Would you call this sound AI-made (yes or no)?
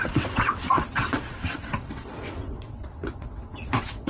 yes